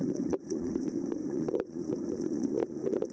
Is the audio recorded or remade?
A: remade